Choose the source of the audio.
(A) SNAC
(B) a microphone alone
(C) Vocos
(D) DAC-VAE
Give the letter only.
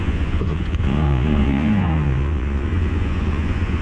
C